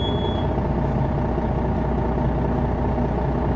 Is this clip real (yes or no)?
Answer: yes